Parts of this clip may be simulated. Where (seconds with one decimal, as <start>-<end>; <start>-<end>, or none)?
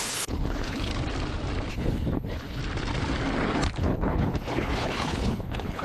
0.0-0.9; 1.7-2.6; 3.8-5.8